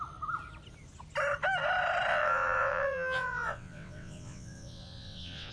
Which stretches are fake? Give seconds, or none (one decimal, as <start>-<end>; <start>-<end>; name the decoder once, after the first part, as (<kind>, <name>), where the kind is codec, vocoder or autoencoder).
2.1-5.5 (vocoder, WaveNeXt)